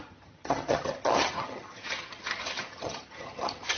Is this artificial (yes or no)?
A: yes